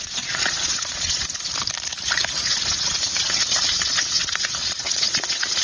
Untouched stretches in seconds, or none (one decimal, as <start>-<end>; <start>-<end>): 1.5-2.3